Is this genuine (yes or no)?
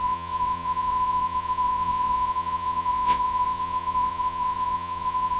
no